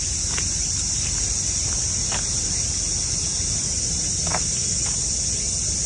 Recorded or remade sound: recorded